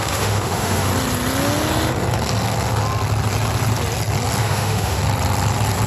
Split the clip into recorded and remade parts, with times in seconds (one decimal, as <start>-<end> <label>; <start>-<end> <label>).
0.0-0.9 remade; 0.9-4.4 recorded; 4.4-5.0 remade; 5.0-5.9 recorded